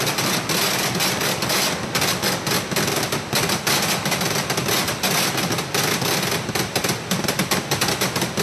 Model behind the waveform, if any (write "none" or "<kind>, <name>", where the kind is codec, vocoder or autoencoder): none